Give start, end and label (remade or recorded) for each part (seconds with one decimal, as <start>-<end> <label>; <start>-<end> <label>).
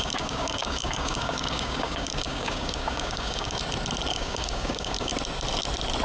0.0-3.6 remade; 3.6-4.1 recorded; 4.1-5.1 remade; 5.1-6.0 recorded